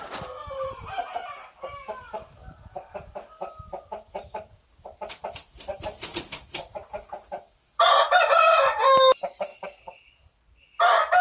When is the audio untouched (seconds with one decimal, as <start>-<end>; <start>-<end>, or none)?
0.0-11.2